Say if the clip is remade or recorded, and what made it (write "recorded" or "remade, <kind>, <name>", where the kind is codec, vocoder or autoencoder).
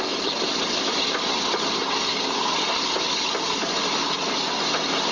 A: recorded